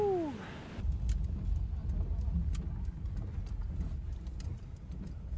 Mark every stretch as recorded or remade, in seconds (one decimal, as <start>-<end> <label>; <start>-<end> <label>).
0.0-5.4 recorded